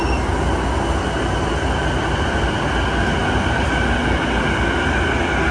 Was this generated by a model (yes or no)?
no